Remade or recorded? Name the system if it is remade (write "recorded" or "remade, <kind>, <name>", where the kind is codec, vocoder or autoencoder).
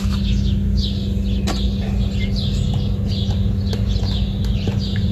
recorded